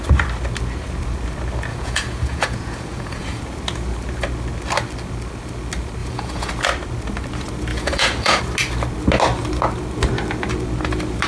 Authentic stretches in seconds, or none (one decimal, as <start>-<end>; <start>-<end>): 0.0-1.7; 3.4-6.0; 6.5-7.7; 8.4-11.3